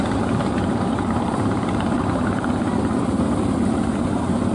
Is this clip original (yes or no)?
no